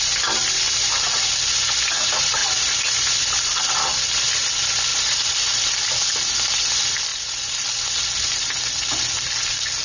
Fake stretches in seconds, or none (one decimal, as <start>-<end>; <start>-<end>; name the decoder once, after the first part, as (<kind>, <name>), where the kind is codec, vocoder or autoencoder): none